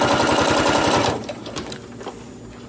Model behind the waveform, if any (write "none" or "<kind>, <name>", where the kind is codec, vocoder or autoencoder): none